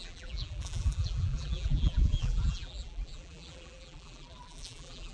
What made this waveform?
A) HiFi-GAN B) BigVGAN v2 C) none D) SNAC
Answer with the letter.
B